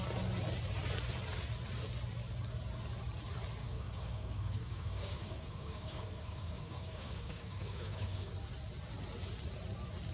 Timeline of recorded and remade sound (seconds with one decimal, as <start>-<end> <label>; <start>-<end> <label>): 0.0-3.6 recorded; 3.6-8.3 remade; 8.3-10.1 recorded